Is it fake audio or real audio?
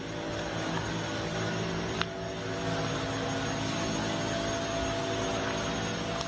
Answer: real